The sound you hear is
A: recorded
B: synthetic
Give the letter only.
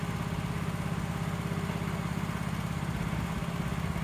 A